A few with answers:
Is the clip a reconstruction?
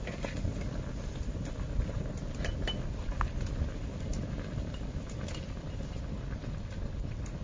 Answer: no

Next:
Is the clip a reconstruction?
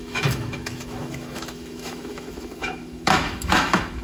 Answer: yes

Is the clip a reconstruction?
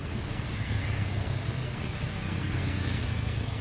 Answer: yes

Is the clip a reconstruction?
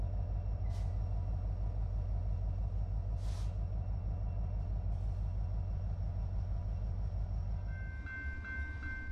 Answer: no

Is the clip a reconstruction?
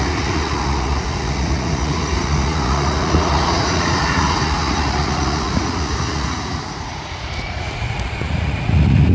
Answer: yes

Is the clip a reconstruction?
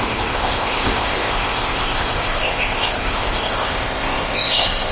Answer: yes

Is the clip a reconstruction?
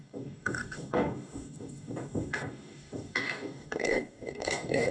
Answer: yes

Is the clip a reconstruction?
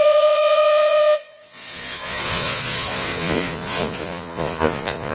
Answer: yes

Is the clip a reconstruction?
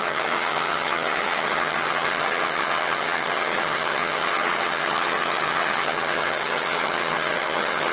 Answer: yes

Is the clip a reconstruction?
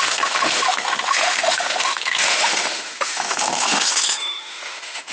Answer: yes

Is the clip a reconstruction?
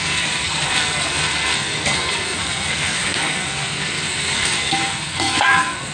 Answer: yes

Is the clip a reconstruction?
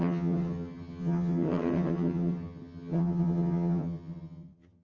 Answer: yes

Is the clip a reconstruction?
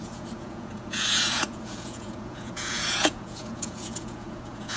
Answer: yes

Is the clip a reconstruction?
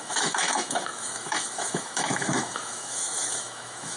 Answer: yes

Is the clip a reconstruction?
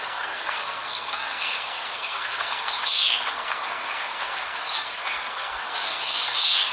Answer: yes